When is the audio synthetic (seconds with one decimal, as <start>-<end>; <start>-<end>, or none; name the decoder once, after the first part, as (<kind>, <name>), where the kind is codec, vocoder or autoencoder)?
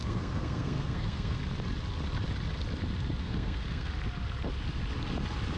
0.0-1.4 (codec, SNAC); 3.2-3.9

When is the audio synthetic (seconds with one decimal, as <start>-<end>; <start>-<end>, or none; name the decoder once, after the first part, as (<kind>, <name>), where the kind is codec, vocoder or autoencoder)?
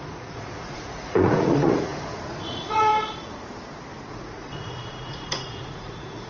0.0-2.9 (vocoder, Vocos); 4.1-6.3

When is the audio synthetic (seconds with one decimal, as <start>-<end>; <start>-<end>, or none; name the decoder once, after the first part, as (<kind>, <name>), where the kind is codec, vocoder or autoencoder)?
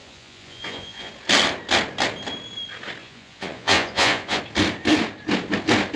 0.0-1.1 (vocoder, Vocos); 3.0-4.4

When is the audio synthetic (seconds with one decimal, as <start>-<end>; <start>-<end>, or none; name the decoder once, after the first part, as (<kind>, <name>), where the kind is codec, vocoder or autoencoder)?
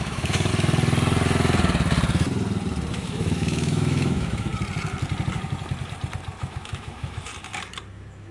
0.0-0.5 (autoencoder, DAC-VAE); 2.9-4.5; 6.4-7.3; 7.9-8.3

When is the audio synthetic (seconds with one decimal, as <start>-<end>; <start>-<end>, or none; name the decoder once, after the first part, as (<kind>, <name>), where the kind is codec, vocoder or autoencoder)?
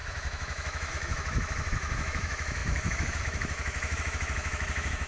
0.0-5.1 (autoencoder, DAC-VAE)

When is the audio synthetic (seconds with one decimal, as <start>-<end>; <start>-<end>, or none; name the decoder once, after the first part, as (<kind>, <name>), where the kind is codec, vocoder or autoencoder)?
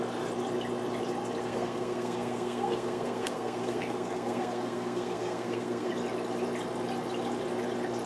1.4-5.9 (codec, SNAC)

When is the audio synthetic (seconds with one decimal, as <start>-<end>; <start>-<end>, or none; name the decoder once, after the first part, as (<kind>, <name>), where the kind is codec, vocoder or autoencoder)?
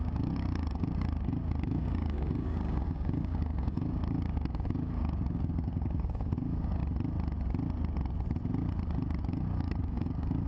0.0-6.8 (codec, DAC); 9.2-10.5